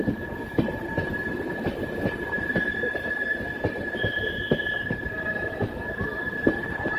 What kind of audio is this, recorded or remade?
remade